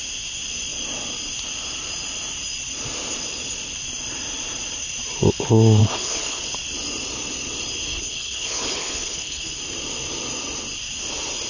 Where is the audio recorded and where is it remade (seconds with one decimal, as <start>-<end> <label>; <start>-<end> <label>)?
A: 0.0-5.8 recorded; 5.8-6.4 remade; 6.4-7.9 recorded; 7.9-9.6 remade; 9.6-11.5 recorded